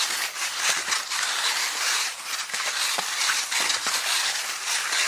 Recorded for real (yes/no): yes